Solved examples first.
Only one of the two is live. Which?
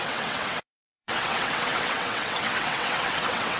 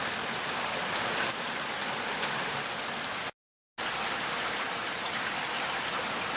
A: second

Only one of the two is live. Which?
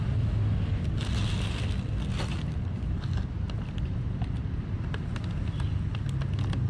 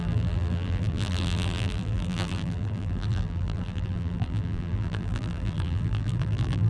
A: first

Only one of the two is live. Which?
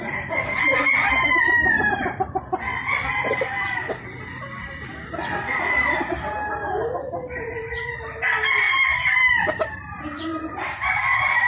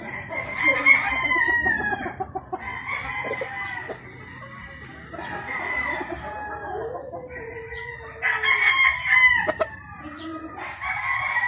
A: second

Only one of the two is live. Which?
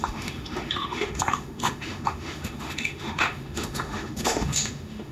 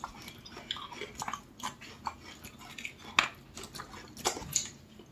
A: second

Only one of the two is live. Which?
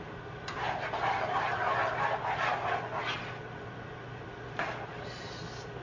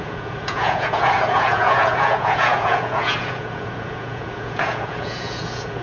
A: first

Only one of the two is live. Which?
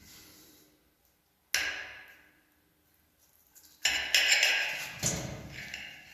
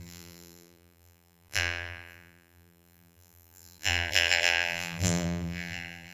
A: first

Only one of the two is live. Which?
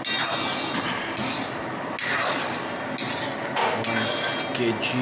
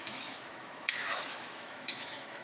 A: first